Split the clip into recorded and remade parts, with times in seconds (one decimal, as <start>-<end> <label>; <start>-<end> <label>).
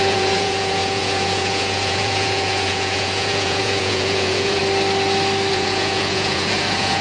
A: 0.0-4.6 remade; 4.6-5.5 recorded; 5.5-7.0 remade